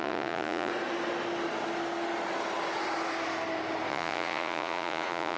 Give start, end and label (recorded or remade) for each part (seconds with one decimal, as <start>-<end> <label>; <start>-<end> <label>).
0.0-0.7 remade; 0.7-3.9 recorded; 3.9-5.4 remade